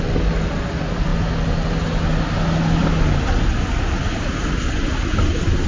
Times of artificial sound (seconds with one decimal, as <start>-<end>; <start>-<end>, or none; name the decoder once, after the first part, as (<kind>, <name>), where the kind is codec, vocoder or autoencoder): none